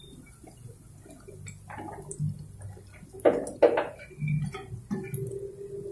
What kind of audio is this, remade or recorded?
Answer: recorded